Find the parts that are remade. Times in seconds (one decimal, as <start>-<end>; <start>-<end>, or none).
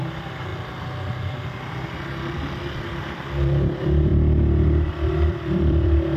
0.0-0.5; 3.0-4.1; 4.9-6.2